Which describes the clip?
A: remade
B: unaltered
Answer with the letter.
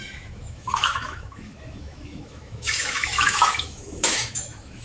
A